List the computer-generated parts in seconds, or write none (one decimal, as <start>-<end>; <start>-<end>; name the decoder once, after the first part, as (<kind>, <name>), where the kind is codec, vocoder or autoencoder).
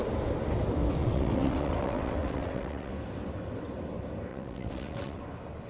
1.0-2.9 (vocoder, WaveNeXt); 4.3-5.2